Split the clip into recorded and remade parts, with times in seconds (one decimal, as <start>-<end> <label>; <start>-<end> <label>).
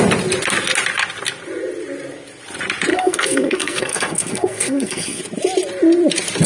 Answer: 0.0-2.9 recorded; 2.9-5.2 remade; 5.2-6.5 recorded